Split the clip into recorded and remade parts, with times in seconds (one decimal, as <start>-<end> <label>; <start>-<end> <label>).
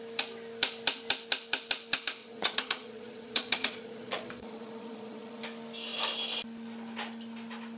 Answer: 0.0-2.2 recorded; 2.2-5.4 remade; 5.4-7.8 recorded